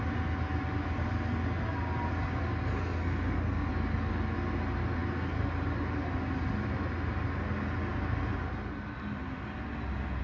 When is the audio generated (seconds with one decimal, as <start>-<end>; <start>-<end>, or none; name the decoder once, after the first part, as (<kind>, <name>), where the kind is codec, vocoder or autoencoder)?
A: 2.8-3.7 (codec, SNAC)